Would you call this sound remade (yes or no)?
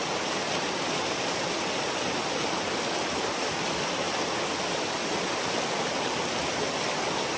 no